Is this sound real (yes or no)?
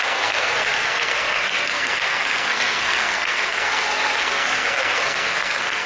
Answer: no